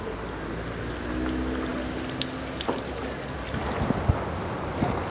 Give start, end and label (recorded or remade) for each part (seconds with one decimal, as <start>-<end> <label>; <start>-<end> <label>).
0.0-5.1 recorded